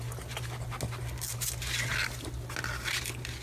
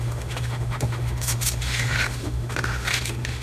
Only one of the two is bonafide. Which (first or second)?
first